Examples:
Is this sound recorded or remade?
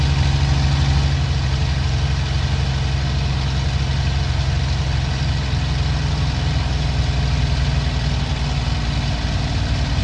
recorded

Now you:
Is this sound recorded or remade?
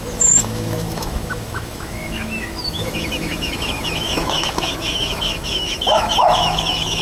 remade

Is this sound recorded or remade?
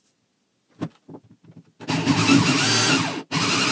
recorded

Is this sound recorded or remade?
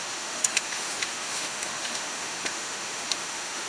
remade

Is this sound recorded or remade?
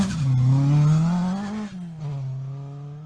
recorded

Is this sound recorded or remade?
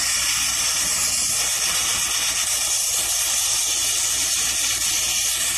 recorded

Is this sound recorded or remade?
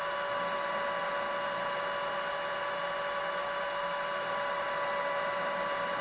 recorded